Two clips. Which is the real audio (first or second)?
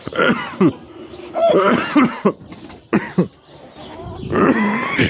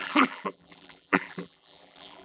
first